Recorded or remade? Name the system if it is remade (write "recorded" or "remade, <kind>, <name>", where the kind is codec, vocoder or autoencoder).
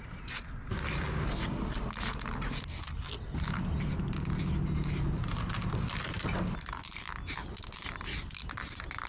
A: recorded